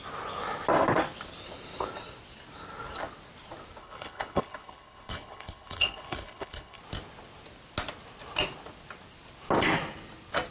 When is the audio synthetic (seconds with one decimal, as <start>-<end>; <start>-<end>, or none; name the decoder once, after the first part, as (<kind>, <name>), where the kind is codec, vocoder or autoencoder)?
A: 3.8-6.8 (codec, HILCodec)